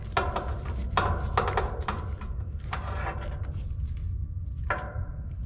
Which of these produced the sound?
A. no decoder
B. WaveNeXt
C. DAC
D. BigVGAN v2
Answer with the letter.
A